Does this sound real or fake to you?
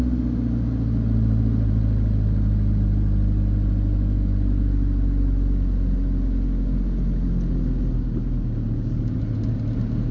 real